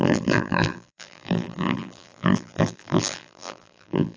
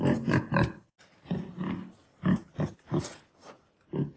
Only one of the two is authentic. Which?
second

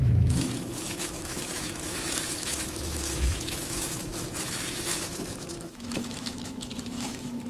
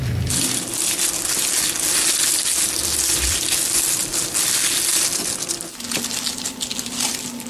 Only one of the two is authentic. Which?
second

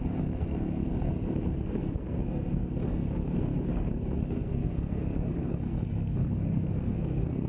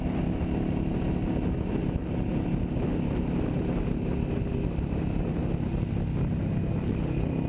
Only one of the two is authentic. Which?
second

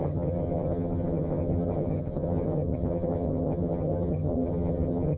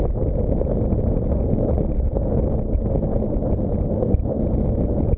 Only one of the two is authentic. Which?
second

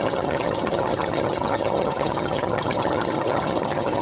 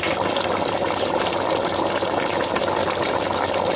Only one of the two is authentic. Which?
second